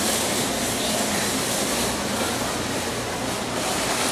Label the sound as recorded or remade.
recorded